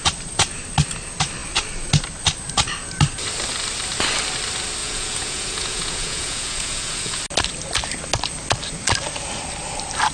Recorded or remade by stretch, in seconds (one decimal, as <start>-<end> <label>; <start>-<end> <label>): 0.0-4.8 recorded; 4.8-7.2 remade; 7.2-10.1 recorded